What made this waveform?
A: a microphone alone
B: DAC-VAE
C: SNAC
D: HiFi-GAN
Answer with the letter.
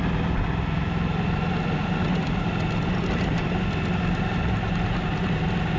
A